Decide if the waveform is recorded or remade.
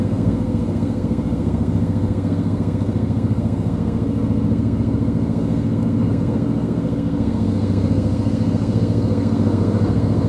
remade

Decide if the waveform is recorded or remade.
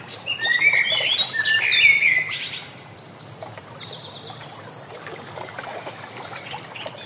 remade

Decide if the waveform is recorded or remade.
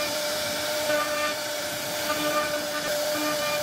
remade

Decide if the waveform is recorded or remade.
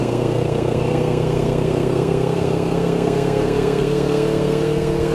remade